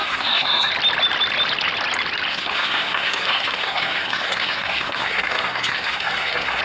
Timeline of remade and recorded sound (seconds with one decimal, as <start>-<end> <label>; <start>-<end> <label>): 0.0-0.7 remade; 0.7-2.3 recorded; 2.3-6.6 remade

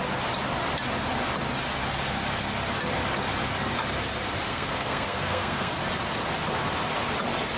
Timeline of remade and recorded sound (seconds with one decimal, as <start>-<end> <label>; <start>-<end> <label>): 0.0-4.5 recorded; 4.5-5.7 remade; 5.7-7.6 recorded

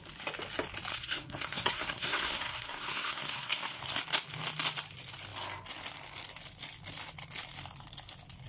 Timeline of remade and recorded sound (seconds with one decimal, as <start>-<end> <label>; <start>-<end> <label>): 0.0-0.9 recorded; 0.9-3.8 remade; 3.8-8.5 recorded